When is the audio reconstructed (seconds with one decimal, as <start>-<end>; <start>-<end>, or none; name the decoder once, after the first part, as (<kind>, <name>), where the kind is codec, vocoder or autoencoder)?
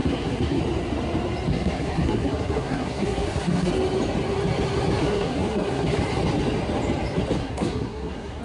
0.0-0.6 (codec, SNAC); 1.5-3.7; 5.0-6.0; 7.4-8.4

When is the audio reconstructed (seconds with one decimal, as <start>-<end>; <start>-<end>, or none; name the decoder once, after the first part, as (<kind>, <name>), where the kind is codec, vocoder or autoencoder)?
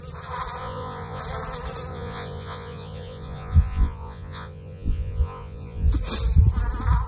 0.6-1.2 (vocoder, Vocos); 1.9-5.9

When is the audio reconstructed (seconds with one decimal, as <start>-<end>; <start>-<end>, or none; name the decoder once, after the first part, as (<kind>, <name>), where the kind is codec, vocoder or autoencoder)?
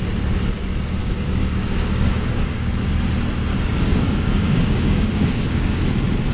1.0-2.7 (codec, DAC); 3.5-5.8